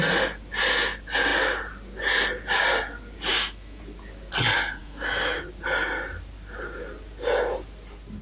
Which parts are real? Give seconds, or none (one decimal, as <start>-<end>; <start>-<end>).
0.0-3.3; 3.8-4.8; 5.4-8.2